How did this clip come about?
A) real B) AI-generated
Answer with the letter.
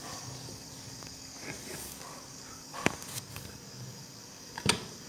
B